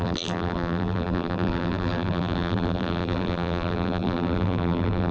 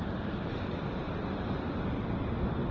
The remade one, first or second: first